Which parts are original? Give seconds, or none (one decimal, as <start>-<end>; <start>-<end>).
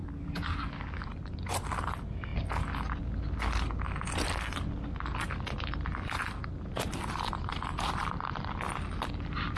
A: 1.1-9.6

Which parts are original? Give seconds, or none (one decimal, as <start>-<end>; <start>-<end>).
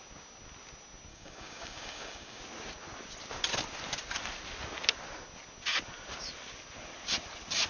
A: 0.0-1.1; 2.4-7.7